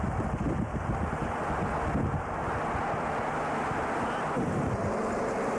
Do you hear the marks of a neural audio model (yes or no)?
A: no